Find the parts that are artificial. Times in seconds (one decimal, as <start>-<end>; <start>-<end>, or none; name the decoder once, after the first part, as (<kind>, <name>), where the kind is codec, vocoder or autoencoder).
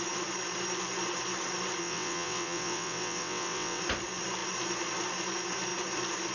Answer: 1.8-3.8 (vocoder, WaveNeXt)